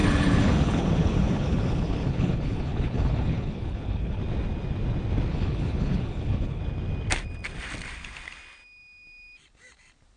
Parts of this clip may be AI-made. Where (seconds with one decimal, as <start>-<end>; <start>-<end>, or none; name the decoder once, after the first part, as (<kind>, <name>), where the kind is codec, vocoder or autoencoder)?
0.0-4.2 (codec, HILCodec); 5.3-6.6